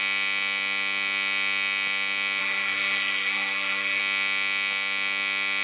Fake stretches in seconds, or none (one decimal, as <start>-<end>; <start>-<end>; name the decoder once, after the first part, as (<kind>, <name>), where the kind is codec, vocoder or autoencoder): 2.4-4.0 (codec, SNAC)